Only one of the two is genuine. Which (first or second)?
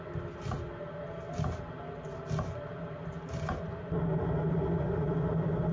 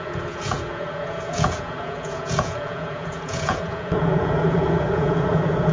first